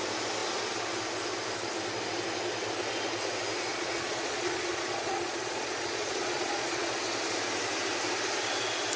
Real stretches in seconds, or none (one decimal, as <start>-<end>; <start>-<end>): 0.0-3.7; 7.0-9.0